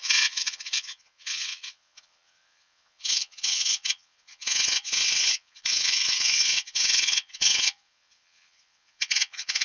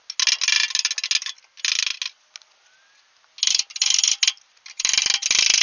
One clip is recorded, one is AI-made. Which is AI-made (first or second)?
first